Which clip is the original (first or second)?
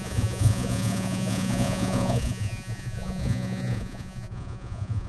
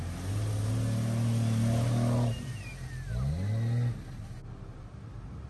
second